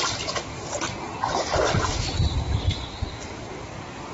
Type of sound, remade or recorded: recorded